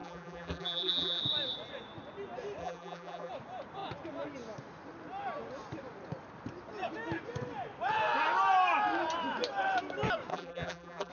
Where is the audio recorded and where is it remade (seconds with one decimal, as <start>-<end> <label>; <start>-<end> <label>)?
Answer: 0.0-1.2 remade; 1.2-2.6 recorded; 2.6-3.3 remade; 3.3-10.3 recorded; 10.3-11.1 remade